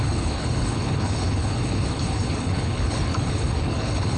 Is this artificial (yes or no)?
yes